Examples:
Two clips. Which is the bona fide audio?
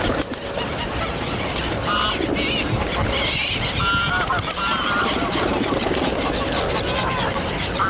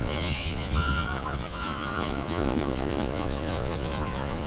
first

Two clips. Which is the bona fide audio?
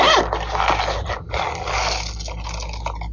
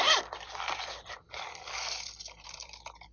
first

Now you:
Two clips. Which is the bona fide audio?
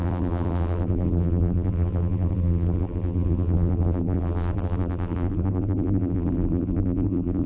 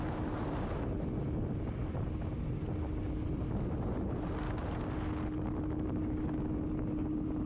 second